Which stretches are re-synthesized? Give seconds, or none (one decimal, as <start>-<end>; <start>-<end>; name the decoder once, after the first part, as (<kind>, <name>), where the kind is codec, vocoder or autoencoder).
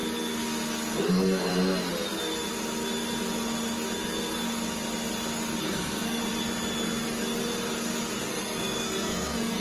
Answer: 1.1-1.5 (codec, SNAC); 5.6-6.2; 8.3-9.6